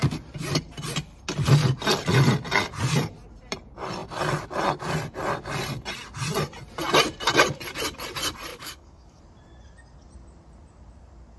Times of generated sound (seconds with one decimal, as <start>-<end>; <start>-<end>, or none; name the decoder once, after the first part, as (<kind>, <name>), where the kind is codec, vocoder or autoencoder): 8.5-9.2 (codec, DAC)